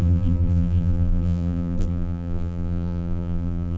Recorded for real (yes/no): no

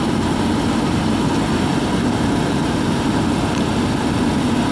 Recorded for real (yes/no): no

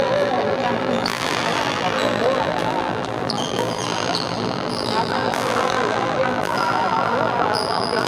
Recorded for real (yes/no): no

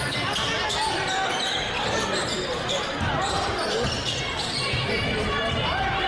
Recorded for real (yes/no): no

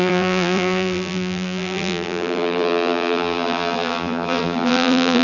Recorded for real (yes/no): no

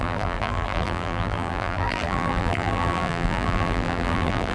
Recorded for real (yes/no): no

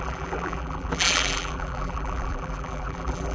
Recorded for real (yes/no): no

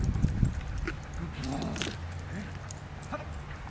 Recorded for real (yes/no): yes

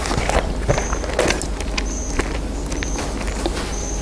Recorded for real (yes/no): yes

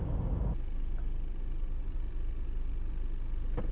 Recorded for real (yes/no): yes